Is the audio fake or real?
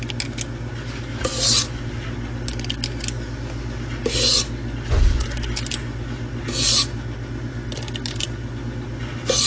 real